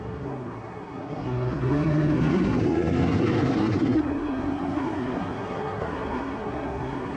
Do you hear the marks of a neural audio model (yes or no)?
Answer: yes